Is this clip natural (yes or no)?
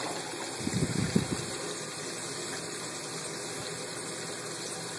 yes